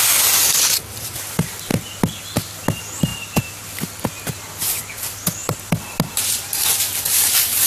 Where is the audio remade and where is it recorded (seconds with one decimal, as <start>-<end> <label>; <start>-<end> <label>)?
0.0-7.7 recorded